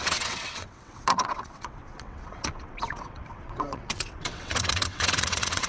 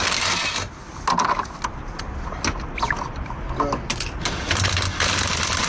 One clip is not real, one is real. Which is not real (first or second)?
first